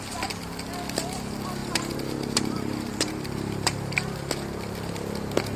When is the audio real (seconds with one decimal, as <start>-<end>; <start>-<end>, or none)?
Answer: 0.0-1.6; 4.3-5.6